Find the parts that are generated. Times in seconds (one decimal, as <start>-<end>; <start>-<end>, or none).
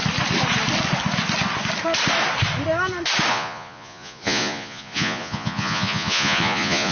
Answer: 3.3-6.9